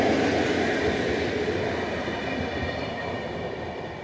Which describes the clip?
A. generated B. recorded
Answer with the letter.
B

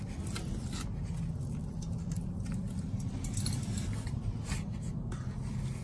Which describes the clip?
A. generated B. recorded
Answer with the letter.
B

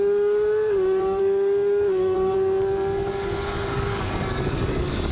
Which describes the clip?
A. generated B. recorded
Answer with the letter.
A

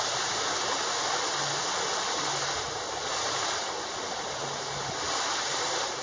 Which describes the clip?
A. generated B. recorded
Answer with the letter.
B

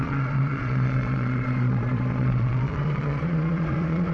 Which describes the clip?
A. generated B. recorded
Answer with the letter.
A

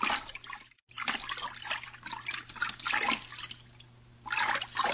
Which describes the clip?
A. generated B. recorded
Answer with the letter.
B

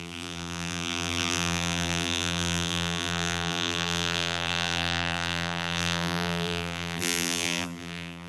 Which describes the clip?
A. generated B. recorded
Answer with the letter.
A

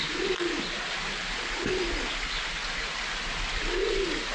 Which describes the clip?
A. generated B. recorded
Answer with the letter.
B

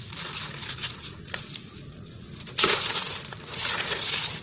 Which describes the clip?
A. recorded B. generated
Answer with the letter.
B